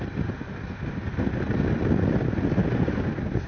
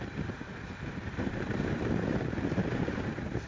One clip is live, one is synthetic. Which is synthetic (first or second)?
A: second